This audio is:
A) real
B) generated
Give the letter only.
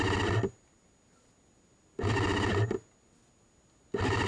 A